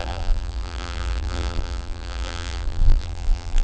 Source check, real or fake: fake